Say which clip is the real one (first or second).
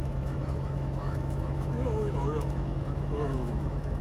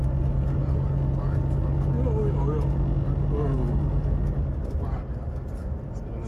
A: second